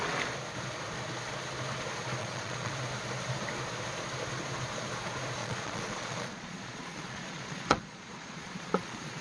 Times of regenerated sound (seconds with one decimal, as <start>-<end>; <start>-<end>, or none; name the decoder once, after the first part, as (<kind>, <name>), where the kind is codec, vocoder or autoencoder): 2.2-2.7 (vocoder, Vocos); 5.4-9.2